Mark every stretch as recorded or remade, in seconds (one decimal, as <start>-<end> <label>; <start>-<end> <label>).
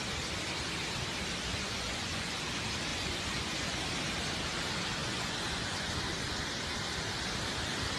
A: 0.0-1.5 recorded; 1.5-2.4 remade; 2.4-2.9 recorded; 2.9-3.8 remade; 3.8-5.0 recorded; 5.0-5.9 remade; 5.9-8.0 recorded